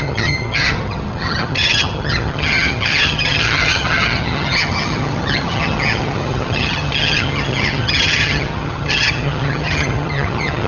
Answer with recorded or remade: remade